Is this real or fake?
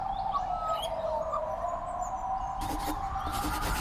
real